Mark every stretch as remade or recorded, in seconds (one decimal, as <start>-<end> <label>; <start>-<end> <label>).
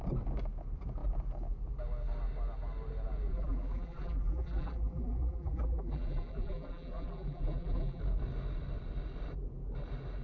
0.0-3.3 recorded; 3.3-8.0 remade; 8.0-10.2 recorded